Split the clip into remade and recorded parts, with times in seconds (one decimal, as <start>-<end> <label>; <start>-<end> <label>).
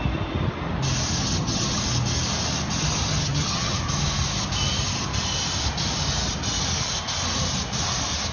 0.0-1.2 recorded; 1.2-1.8 remade; 1.8-3.1 recorded; 3.1-3.8 remade; 3.8-8.3 recorded